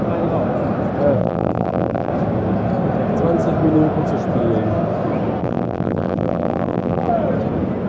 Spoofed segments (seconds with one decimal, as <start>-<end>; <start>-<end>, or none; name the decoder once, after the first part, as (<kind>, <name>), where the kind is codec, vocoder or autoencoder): 1.2-2.1 (vocoder, BigVGAN v2); 5.4-7.1